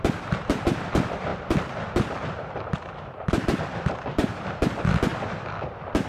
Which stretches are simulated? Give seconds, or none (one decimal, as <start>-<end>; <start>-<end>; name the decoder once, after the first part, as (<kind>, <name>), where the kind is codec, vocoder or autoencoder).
1.3-3.6 (vocoder, BigVGAN v2)

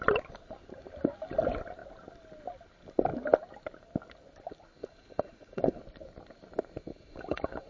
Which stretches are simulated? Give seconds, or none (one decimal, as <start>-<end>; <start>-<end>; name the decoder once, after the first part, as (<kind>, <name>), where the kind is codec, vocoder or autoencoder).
4.8-5.8 (vocoder, Vocos); 6.9-7.7